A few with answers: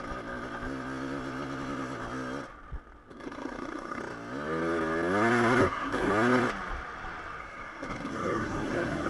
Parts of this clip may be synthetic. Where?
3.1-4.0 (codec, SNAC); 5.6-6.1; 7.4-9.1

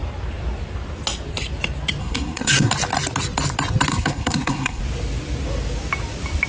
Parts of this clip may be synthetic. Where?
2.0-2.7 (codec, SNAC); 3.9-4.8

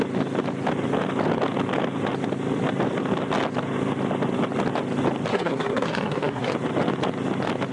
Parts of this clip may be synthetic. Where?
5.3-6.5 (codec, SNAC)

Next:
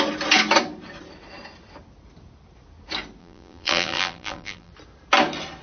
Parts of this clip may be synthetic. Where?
3.2-4.7 (vocoder, BigVGAN v2)